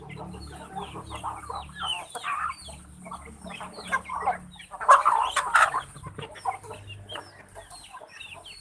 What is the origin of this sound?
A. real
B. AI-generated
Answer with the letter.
A